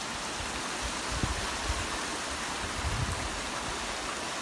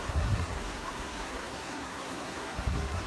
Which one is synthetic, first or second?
second